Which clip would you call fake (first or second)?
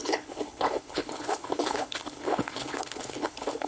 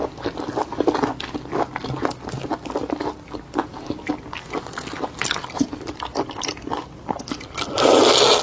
first